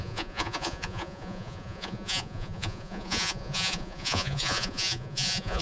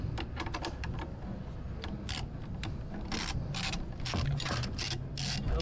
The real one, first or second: second